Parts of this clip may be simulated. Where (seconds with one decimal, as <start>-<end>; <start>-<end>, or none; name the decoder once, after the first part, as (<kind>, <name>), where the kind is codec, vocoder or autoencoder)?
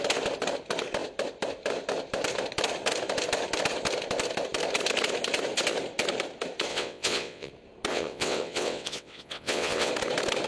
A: 6.7-7.5 (vocoder, WaveNeXt); 7.9-9.9